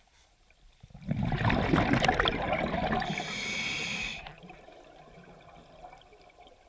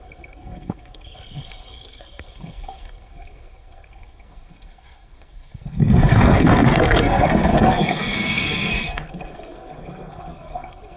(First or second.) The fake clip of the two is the second